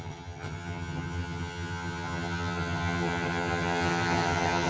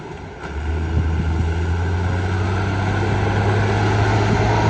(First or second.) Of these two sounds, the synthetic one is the first